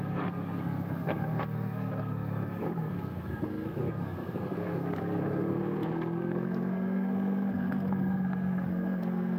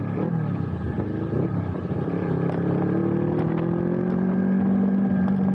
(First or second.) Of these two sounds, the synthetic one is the first